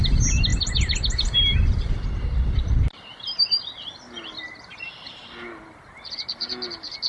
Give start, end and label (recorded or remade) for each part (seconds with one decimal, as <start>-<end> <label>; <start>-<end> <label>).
0.0-7.1 recorded